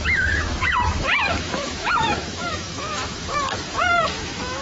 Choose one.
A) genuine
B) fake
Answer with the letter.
B